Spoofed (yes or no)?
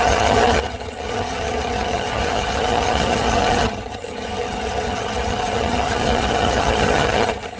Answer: yes